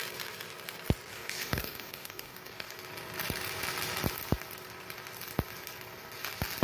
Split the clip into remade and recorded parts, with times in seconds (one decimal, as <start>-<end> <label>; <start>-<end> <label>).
0.0-1.1 recorded; 1.1-2.7 remade; 2.7-6.6 recorded